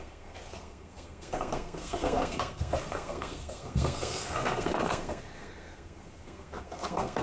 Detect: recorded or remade remade